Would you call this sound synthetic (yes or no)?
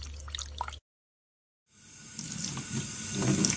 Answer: no